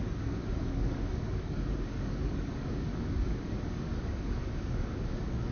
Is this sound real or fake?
fake